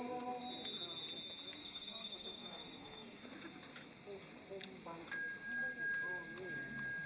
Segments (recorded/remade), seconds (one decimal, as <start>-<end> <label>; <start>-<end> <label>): 0.0-1.6 recorded; 1.6-3.2 remade; 3.2-7.1 recorded